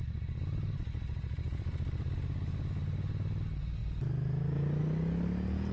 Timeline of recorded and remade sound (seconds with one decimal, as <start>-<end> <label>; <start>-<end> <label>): 0.0-2.1 remade; 2.1-5.7 recorded